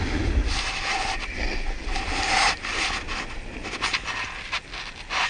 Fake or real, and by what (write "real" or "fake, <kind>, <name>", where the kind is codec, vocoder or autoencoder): real